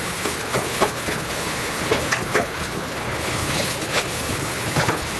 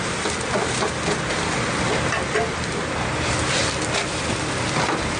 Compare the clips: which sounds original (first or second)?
second